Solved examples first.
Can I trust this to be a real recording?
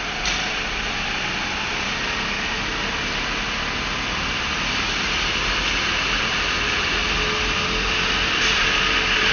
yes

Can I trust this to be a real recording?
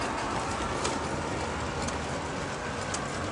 yes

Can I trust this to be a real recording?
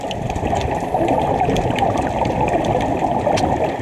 yes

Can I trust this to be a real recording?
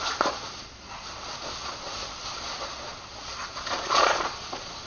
no